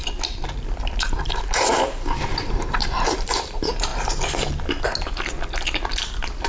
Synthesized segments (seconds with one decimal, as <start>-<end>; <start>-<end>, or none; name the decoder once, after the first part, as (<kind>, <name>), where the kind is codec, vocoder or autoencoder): 0.8-3.9 (vocoder, BigVGAN v2)